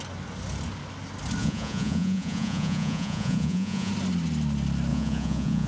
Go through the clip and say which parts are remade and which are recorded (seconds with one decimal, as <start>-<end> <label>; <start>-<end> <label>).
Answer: 0.0-1.4 recorded; 1.4-3.9 remade; 3.9-4.9 recorded; 4.9-5.7 remade